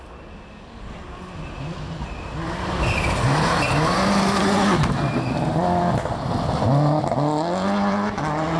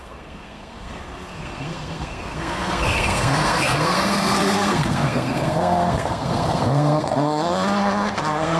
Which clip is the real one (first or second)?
first